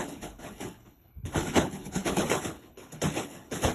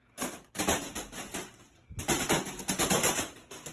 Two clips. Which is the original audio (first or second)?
second